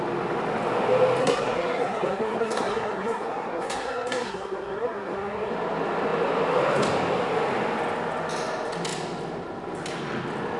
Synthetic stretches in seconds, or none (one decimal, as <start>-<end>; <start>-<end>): 1.2-5.5